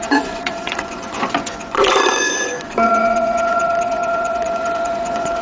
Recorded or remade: remade